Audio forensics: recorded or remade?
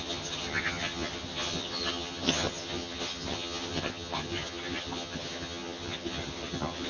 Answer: remade